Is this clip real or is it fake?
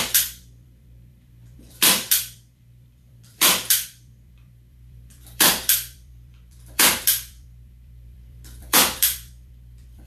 fake